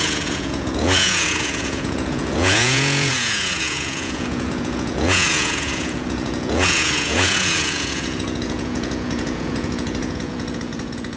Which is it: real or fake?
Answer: fake